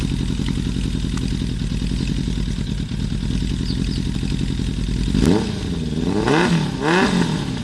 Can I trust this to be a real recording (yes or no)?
yes